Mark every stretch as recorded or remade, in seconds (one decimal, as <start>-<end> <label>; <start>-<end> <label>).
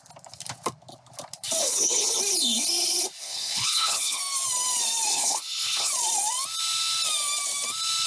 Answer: 0.0-1.6 recorded; 1.6-2.2 remade; 2.2-3.2 recorded; 3.2-4.2 remade; 4.2-5.1 recorded; 5.1-5.9 remade; 5.9-8.1 recorded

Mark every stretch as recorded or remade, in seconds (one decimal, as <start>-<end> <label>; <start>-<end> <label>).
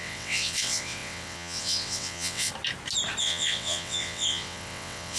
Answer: 0.0-2.5 remade; 2.5-3.2 recorded; 3.2-5.2 remade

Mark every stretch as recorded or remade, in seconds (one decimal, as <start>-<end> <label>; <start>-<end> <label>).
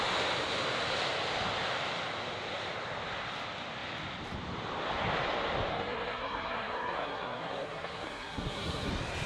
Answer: 0.0-5.7 recorded; 5.7-8.9 remade; 8.9-9.3 recorded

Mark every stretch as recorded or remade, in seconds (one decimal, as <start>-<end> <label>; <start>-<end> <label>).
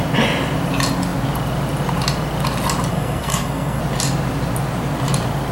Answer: 0.0-2.9 recorded; 2.9-3.8 remade; 3.8-5.5 recorded